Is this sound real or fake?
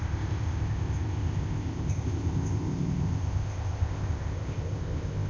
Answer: fake